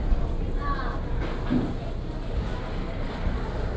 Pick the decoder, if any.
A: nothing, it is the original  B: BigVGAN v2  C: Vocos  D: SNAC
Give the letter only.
A